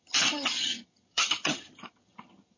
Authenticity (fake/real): fake